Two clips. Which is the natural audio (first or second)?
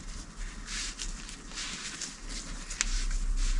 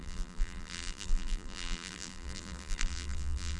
first